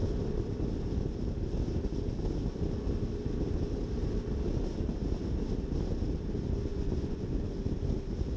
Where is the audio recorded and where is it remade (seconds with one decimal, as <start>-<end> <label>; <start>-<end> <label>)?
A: 0.0-6.7 recorded; 6.7-7.3 remade; 7.3-8.4 recorded